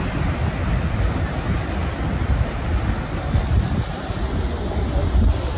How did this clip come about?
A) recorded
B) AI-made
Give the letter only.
A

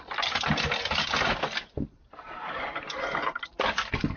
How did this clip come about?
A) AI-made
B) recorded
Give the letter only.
B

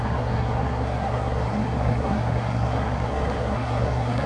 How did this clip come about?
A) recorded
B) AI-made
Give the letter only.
B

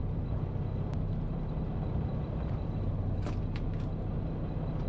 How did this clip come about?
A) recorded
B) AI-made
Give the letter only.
A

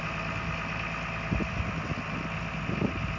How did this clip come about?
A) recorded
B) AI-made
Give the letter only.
A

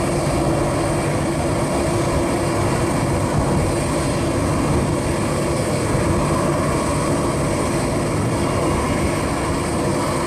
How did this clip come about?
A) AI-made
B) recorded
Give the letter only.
B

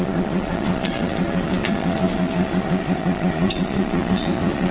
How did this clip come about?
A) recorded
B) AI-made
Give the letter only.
B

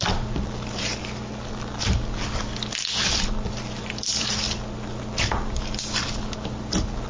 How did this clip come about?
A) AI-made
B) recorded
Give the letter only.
B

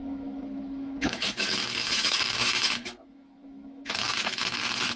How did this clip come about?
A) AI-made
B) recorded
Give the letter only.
A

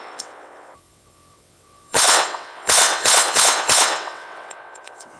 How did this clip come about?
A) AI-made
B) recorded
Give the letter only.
A